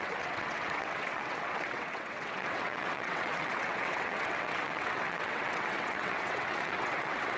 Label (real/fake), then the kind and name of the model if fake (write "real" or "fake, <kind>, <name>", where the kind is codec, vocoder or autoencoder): fake, vocoder, WaveNeXt